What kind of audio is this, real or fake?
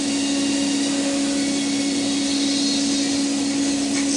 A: real